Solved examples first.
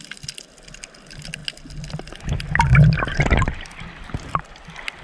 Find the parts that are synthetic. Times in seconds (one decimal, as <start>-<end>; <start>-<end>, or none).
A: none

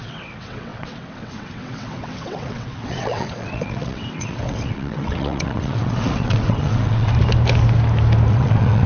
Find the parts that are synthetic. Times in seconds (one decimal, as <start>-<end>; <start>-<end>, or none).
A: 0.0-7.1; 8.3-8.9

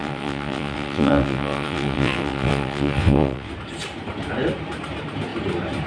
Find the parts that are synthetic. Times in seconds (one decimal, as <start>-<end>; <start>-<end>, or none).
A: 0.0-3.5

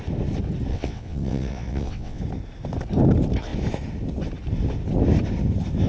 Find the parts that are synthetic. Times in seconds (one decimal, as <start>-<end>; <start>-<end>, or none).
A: 0.7-2.2

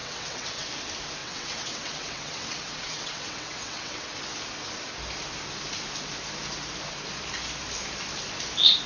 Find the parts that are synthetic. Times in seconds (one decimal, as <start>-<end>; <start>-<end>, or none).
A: 0.0-0.7; 1.2-4.1